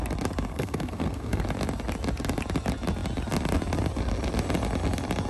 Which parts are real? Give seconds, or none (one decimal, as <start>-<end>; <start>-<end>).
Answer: 0.0-0.5; 1.4-5.3